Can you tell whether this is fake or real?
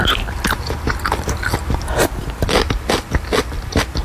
real